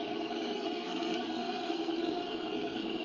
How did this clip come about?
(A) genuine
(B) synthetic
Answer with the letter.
B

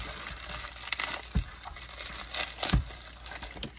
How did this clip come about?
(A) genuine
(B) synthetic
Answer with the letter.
A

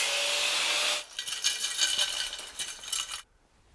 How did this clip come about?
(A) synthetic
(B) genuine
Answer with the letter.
B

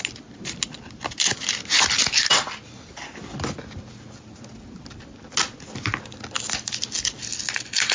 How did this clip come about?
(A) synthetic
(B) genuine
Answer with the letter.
B